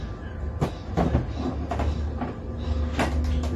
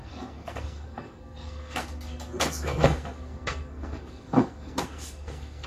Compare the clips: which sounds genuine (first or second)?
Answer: first